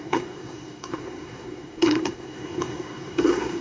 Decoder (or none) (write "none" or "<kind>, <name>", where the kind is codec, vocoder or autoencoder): codec, SNAC